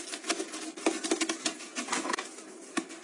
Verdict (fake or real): real